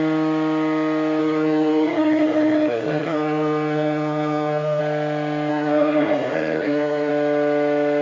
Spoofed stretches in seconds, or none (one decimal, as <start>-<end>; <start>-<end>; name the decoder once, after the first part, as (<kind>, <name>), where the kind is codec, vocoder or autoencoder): 1.2-4.8 (codec, SNAC); 5.5-7.1